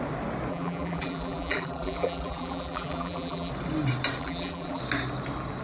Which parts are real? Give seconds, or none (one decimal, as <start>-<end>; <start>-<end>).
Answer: 0.0-0.5; 3.5-4.2; 4.8-5.6